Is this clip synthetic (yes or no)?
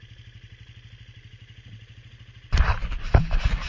no